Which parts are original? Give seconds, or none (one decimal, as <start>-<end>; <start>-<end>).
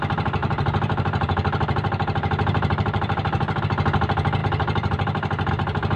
0.0-0.4; 3.6-4.4; 5.5-6.0